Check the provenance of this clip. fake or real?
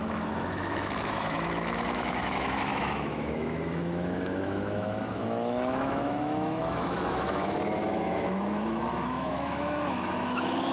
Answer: fake